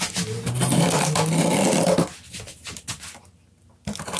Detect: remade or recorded recorded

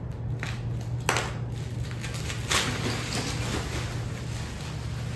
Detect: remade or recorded recorded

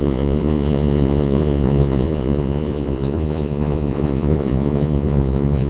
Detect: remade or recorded remade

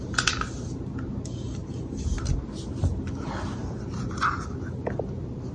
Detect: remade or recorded recorded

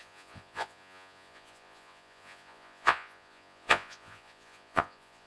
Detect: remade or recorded remade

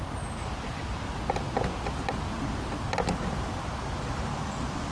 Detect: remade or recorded recorded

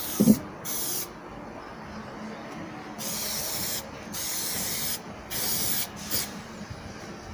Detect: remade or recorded recorded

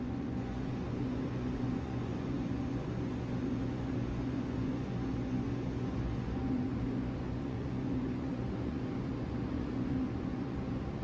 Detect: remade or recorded remade